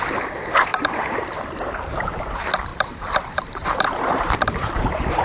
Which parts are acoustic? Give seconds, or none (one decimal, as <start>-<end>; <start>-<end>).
none